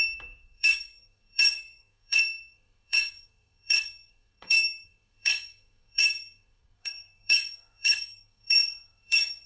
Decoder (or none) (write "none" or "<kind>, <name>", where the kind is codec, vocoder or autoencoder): codec, SNAC